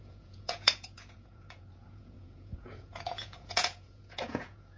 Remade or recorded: remade